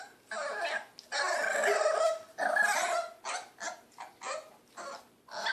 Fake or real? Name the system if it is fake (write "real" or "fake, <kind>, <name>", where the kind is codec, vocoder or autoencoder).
real